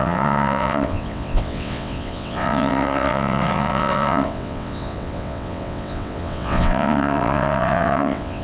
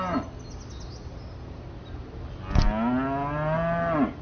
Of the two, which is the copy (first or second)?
first